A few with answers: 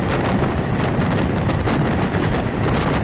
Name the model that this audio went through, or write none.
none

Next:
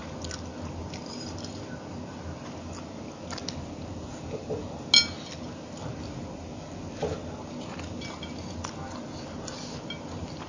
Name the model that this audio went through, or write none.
none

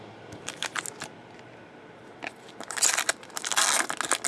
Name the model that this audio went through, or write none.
none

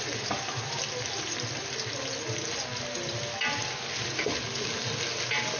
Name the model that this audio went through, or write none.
none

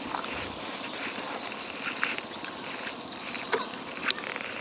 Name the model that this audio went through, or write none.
none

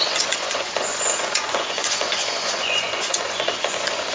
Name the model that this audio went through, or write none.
vocoder, Vocos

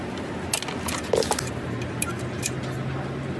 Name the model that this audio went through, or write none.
none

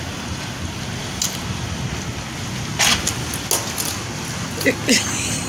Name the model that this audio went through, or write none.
none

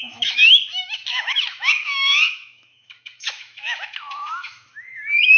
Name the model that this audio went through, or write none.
autoencoder, DAC-VAE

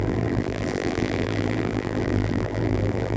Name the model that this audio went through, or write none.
vocoder, BigVGAN v2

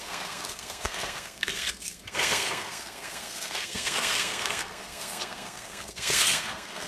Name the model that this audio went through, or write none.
codec, SNAC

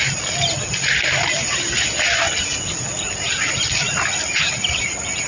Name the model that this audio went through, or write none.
none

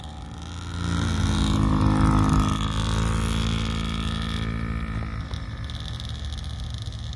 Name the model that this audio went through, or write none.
none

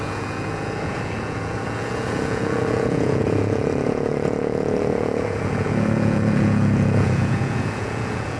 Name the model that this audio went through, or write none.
vocoder, Vocos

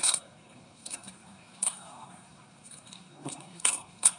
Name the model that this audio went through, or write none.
codec, SNAC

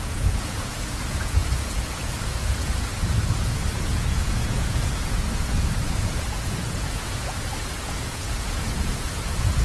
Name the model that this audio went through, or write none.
vocoder, Vocos